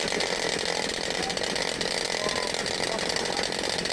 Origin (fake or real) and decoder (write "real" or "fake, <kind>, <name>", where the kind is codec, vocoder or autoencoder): real